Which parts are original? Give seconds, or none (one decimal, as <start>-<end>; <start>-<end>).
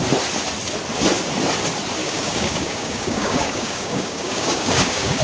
0.0-2.0